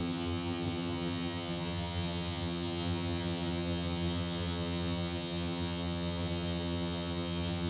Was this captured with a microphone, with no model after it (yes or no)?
no